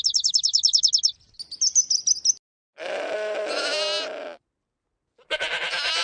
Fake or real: real